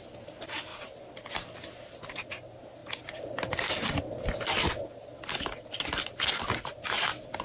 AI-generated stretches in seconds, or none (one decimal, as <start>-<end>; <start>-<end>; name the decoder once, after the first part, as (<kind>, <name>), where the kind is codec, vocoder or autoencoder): none